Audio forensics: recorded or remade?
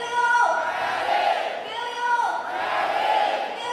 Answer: remade